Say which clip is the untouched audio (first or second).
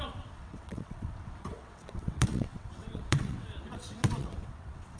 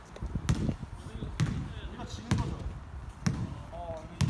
second